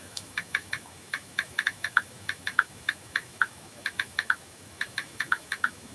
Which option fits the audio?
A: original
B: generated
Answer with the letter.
B